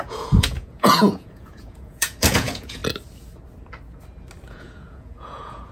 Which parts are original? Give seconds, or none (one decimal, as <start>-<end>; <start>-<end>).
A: 2.8-4.5